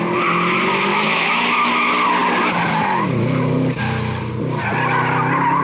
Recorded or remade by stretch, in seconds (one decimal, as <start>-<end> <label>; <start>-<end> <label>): 0.0-0.9 recorded; 0.9-1.7 remade; 1.7-5.6 recorded

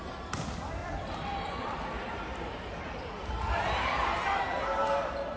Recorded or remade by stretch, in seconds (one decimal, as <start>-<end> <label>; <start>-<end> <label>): 0.0-0.8 recorded; 0.8-4.0 remade; 4.0-5.4 recorded

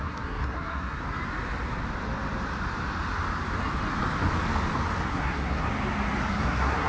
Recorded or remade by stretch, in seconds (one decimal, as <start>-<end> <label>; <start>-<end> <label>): 0.0-1.0 remade; 1.0-5.1 recorded; 5.1-5.7 remade; 5.7-6.3 recorded; 6.3-6.9 remade

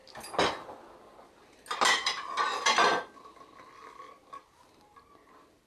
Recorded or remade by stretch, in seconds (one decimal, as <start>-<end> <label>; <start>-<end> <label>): 0.0-5.7 recorded

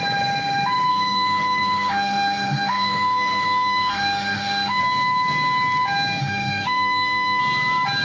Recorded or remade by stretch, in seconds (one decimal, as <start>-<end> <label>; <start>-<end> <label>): 0.0-0.9 recorded; 0.9-4.8 remade; 4.8-6.2 recorded; 6.2-7.4 remade; 7.4-8.0 recorded

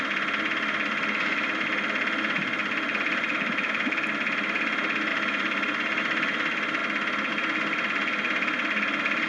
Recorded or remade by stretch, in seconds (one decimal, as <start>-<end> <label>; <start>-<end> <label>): 0.0-5.1 recorded; 5.1-6.0 remade; 6.0-9.3 recorded